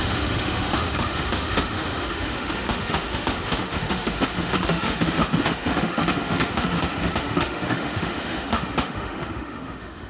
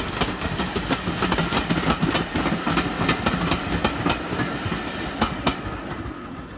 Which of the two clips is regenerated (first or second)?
first